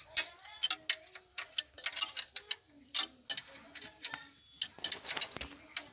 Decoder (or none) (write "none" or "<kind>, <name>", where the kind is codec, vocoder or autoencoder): none